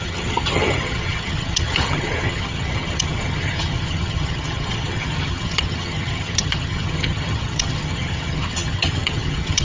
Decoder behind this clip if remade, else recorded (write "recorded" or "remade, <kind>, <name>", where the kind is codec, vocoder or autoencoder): remade, vocoder, HiFi-GAN